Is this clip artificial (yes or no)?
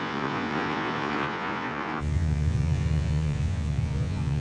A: yes